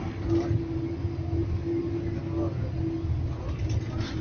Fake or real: real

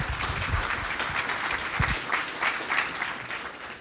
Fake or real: real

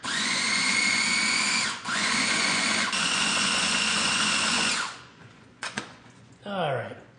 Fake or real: fake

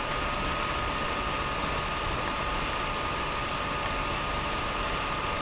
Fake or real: real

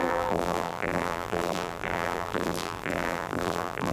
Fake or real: fake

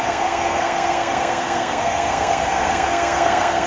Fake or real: fake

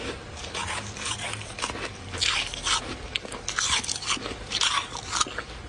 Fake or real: real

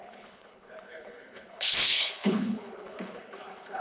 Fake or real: fake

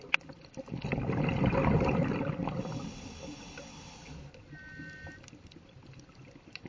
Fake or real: real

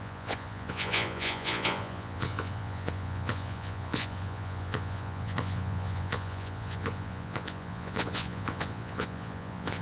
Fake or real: fake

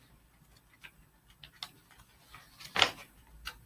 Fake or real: real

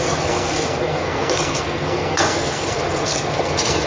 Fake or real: fake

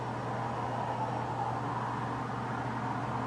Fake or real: real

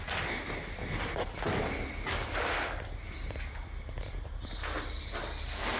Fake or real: real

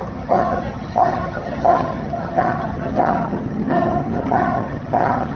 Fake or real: fake